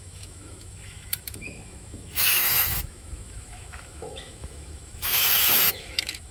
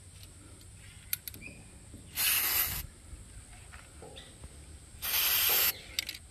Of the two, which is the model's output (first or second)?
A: first